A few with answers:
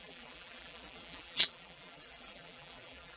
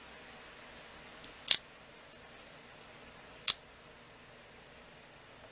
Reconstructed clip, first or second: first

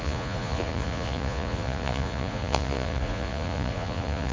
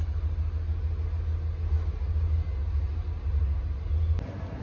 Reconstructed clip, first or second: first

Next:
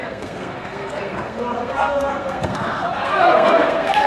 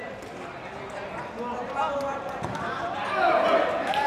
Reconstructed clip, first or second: first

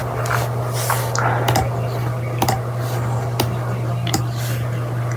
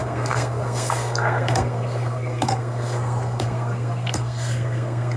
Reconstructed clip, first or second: second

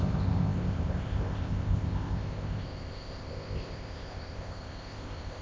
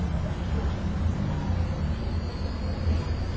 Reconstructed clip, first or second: first